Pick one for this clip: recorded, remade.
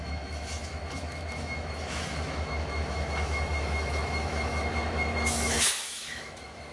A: remade